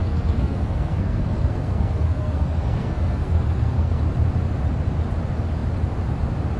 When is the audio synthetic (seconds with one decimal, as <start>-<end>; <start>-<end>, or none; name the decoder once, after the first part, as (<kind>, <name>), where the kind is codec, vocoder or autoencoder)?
0.0-4.0 (codec, SNAC)